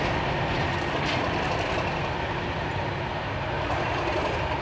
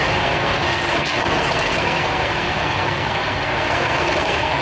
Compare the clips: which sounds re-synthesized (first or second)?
second